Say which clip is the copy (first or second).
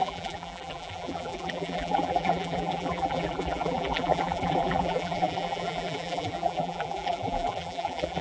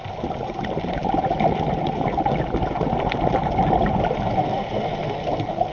first